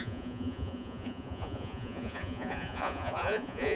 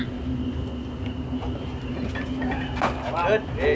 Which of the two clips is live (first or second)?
second